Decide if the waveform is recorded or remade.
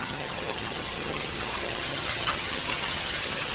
remade